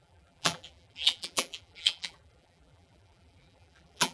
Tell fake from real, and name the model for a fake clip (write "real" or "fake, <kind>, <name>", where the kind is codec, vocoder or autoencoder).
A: fake, vocoder, BigVGAN v2